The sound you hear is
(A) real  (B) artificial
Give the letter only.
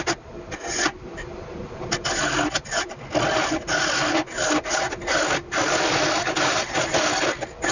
A